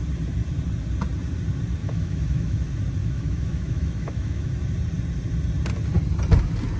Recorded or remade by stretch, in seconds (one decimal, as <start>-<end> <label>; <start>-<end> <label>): 0.0-1.8 recorded; 1.8-2.6 remade; 2.6-3.0 recorded; 3.0-4.5 remade; 4.5-6.8 recorded